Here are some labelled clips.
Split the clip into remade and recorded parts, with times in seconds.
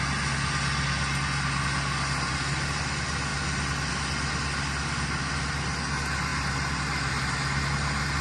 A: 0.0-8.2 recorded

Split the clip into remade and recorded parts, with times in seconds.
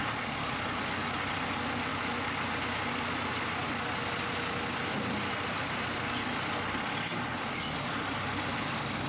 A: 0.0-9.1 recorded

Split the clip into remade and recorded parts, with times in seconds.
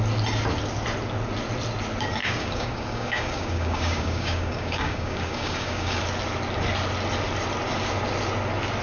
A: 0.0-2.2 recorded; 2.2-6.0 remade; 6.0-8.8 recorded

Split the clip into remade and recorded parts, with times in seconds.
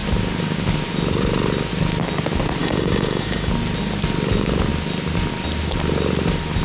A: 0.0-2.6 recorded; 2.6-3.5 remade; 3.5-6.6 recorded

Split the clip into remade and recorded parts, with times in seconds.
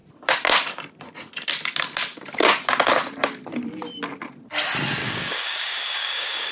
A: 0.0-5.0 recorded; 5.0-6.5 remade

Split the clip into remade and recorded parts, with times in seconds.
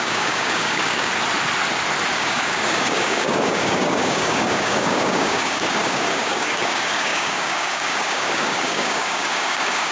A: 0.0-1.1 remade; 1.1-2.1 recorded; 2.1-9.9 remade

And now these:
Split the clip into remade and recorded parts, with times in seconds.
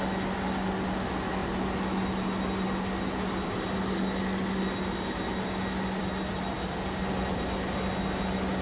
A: 0.0-8.6 recorded